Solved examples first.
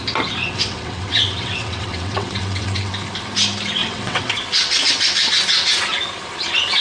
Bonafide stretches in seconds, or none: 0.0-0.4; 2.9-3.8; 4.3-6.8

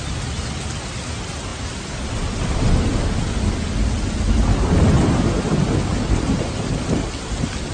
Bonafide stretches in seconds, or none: 0.0-7.7

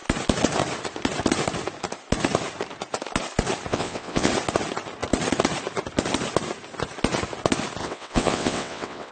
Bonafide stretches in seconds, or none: 0.0-3.7; 4.3-7.8

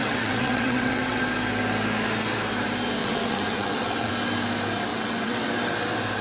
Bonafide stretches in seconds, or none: 1.2-3.0; 4.1-4.9; 5.5-6.2

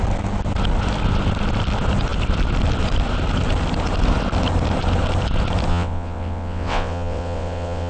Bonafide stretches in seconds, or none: 0.0-5.7

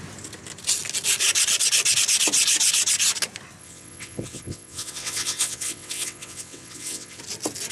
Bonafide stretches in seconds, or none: 0.0-3.6; 7.2-7.7

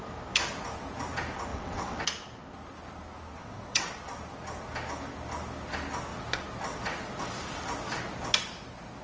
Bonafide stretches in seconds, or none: 0.0-1.5; 2.0-3.3; 3.9-9.0

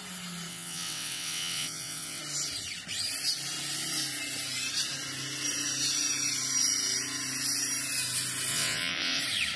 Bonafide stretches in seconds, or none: 0.0-0.5; 2.2-8.5; 9.2-9.6